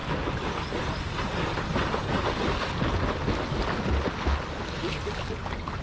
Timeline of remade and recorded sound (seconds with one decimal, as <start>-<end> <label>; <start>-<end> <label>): 0.0-5.8 recorded